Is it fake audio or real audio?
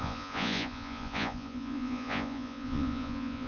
fake